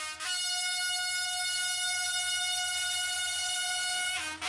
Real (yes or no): yes